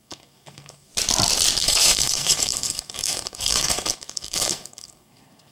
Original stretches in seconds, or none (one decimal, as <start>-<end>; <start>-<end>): 0.9-1.6